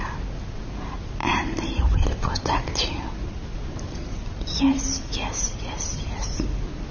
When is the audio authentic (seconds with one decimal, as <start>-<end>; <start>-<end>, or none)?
0.0-6.9